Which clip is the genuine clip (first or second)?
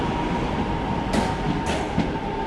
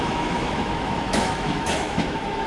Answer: first